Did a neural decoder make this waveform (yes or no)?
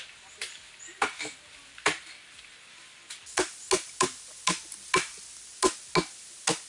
no